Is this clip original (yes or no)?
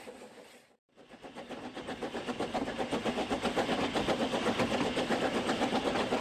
yes